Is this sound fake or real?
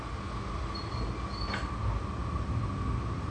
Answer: real